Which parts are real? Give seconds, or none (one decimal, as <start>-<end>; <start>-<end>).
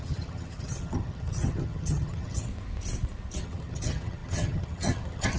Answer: 2.5-3.4